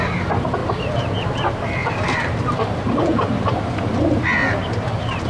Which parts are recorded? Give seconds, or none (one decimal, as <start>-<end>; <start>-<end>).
0.0-0.6; 1.1-1.8; 4.0-4.4